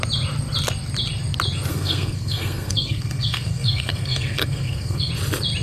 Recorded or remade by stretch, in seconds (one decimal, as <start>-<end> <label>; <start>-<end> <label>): 0.0-1.7 recorded; 1.7-5.1 remade; 5.1-5.6 recorded